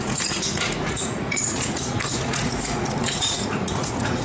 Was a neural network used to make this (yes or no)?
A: yes